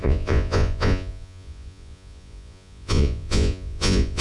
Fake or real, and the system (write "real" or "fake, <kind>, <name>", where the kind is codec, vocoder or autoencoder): fake, vocoder, Vocos